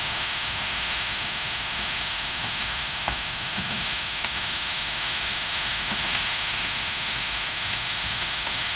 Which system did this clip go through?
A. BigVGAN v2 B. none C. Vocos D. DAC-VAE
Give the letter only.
D